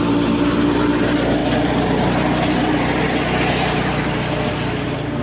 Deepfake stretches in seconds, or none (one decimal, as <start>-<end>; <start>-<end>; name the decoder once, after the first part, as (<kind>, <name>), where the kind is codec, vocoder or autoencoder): none